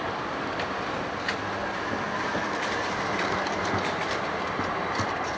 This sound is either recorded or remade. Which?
recorded